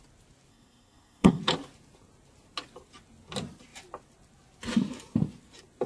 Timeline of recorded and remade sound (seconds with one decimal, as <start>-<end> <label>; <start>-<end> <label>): 0.0-0.5 recorded; 0.5-1.4 remade; 1.4-5.9 recorded